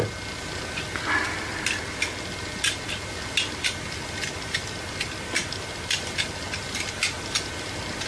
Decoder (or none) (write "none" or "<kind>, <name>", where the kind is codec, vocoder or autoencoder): none